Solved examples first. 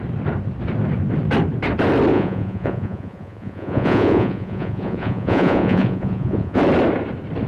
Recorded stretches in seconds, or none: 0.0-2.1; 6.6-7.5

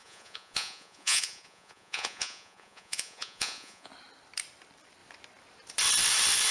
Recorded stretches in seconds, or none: 3.9-6.5